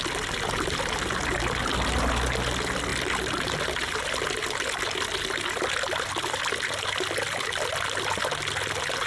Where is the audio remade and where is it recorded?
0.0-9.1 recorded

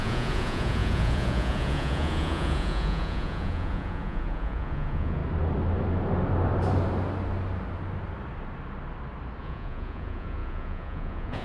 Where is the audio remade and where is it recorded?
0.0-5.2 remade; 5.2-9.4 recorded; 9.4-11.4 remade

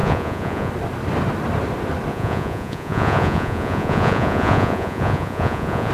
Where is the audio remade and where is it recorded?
0.0-0.7 remade; 0.7-2.1 recorded; 2.1-5.9 remade

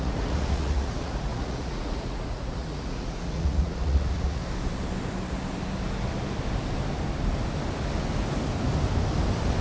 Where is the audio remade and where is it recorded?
0.0-4.4 remade; 4.4-9.6 recorded